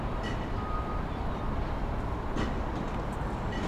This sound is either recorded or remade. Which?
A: recorded